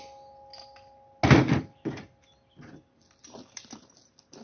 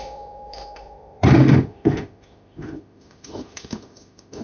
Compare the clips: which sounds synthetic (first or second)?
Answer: second